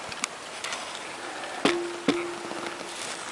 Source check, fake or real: real